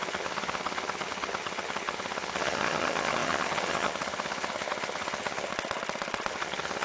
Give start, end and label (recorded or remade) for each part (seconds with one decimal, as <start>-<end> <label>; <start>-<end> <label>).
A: 0.0-5.5 remade; 5.5-6.3 recorded; 6.3-6.8 remade